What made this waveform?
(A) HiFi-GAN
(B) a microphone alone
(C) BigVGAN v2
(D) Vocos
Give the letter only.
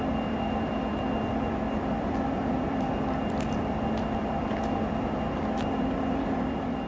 C